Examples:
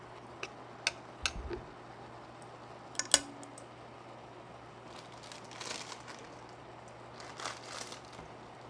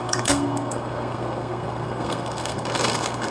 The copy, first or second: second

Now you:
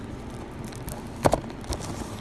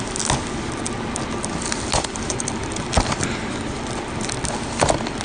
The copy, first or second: second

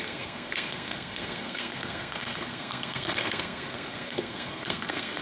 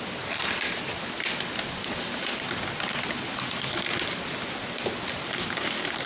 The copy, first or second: first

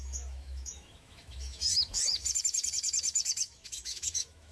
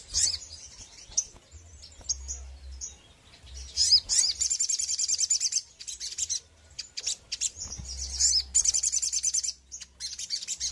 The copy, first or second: first